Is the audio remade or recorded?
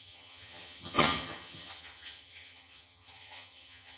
remade